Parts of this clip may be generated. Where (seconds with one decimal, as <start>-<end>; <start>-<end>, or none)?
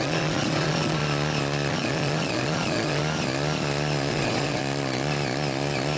0.0-1.0; 1.7-3.0; 4.1-4.6